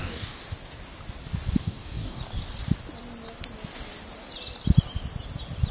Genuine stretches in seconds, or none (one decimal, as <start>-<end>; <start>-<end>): 0.4-1.6; 2.2-5.7